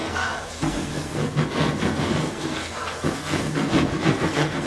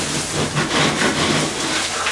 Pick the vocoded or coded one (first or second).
first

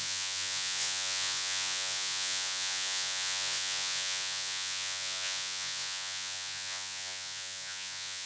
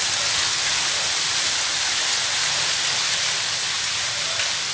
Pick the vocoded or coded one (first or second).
first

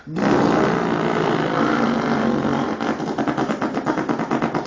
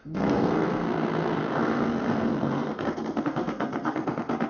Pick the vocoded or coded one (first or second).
second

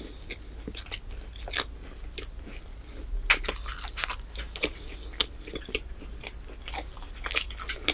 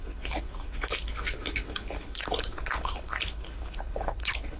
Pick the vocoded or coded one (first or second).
second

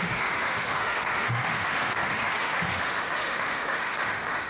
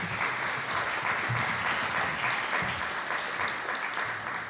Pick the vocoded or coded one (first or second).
first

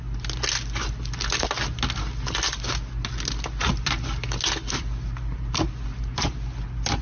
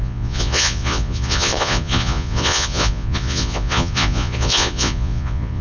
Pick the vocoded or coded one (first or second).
second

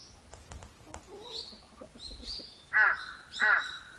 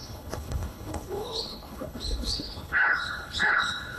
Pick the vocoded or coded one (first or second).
second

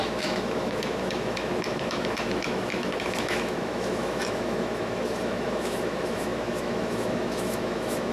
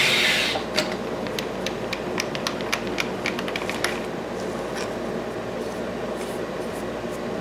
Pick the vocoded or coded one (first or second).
first